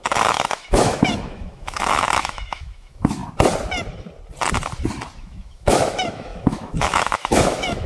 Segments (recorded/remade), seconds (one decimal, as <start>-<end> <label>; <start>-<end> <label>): 0.0-3.2 remade; 3.2-5.2 recorded; 5.2-7.9 remade